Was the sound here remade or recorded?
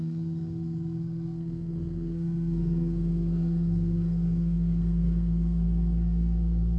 remade